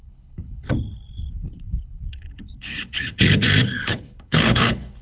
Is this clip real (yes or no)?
no